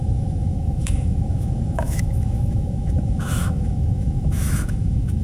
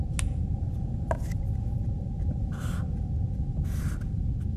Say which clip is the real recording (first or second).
second